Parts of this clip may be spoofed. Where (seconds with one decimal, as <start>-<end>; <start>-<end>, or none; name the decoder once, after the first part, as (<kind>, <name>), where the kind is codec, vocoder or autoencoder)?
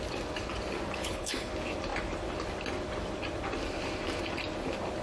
1.0-1.5 (codec, HILCodec)